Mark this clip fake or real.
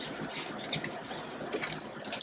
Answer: real